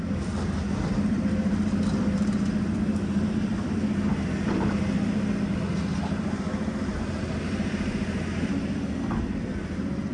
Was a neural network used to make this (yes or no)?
yes